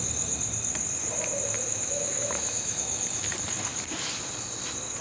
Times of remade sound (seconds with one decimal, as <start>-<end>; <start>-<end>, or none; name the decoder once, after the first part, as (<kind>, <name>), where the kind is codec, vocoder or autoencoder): 1.7-3.0 (autoencoder, DAC-VAE)